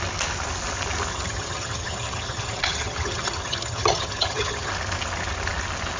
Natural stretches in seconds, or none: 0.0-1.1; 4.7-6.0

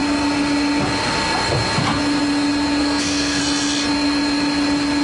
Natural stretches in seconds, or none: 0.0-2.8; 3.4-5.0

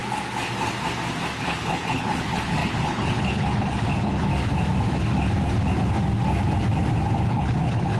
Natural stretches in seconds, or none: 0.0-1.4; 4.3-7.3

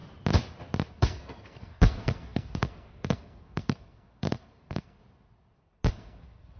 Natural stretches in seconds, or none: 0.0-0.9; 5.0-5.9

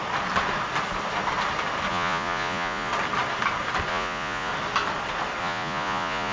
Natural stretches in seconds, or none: 0.0-1.9; 2.9-3.9; 4.5-5.4

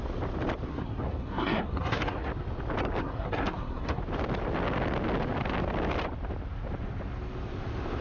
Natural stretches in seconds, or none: 0.0-0.7; 2.3-3.0; 4.0-8.0

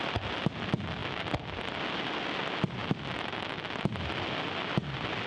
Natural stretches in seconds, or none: 0.0-5.3